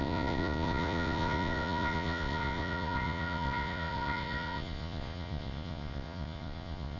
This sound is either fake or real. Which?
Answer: fake